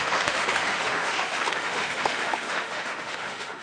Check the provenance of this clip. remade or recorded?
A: remade